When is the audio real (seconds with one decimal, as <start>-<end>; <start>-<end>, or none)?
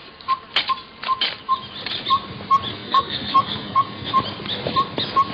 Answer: 0.0-2.7; 4.1-5.3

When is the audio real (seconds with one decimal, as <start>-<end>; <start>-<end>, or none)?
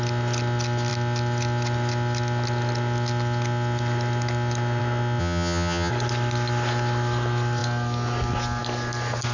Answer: 0.0-5.2; 5.9-9.3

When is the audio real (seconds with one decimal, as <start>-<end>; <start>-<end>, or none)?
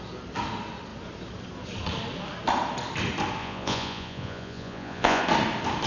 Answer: 0.0-3.4; 5.2-5.9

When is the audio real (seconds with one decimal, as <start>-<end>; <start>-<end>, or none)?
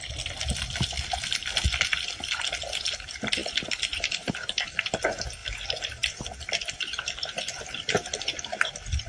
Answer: 0.0-9.1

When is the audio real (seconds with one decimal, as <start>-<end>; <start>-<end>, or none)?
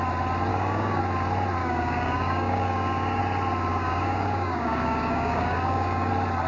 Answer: 0.0-0.5; 1.0-1.6; 3.2-3.7; 6.1-6.5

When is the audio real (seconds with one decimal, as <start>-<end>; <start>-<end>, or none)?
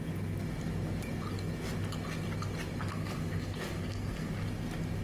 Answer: 0.0-2.9; 4.3-5.0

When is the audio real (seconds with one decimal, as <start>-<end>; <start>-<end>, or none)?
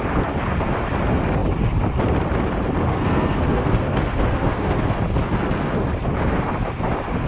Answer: 0.0-2.9; 5.0-7.3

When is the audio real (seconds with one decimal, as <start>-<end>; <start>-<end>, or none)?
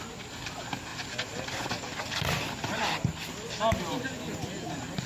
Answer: 0.0-5.1